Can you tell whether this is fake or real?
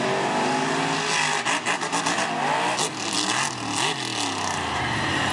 real